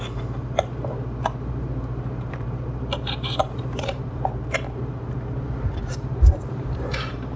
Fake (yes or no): yes